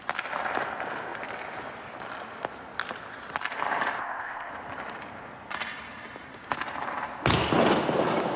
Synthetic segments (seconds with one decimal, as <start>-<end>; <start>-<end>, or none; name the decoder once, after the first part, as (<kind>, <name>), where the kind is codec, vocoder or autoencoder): 4.0-4.5 (codec, ZipCodec)